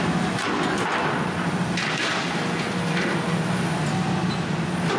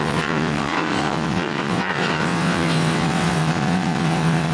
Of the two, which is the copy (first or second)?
second